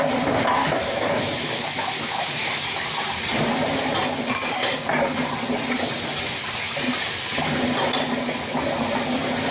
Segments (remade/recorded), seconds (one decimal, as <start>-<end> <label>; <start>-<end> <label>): 0.0-0.6 recorded; 0.6-2.6 remade; 2.6-9.5 recorded